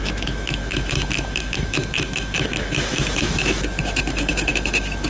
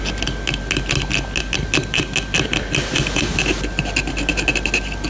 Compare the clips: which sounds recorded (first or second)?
second